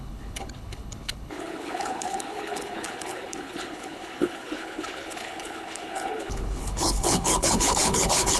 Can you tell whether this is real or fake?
fake